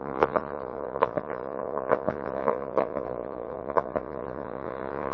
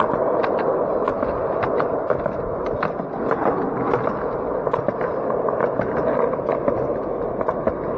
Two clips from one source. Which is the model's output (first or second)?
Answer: first